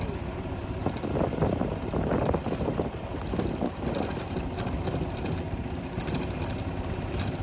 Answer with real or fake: real